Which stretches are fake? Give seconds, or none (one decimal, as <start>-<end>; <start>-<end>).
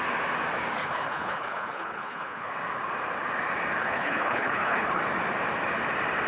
0.8-2.5; 3.8-5.0